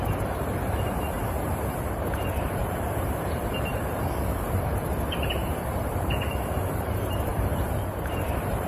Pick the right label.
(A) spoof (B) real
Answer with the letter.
A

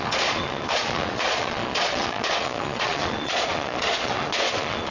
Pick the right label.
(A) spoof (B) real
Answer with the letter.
A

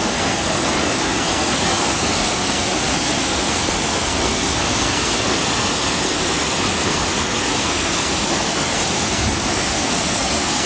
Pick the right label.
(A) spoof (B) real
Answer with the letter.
A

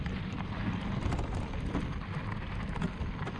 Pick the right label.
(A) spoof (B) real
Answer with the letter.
B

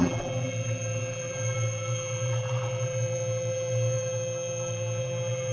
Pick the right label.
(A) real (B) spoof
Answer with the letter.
B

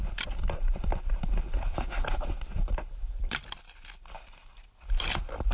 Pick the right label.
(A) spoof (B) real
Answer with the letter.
B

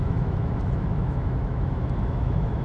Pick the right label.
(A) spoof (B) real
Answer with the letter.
A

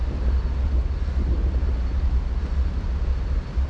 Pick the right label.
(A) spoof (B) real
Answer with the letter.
B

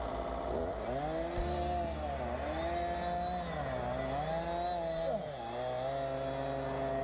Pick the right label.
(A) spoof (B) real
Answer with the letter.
B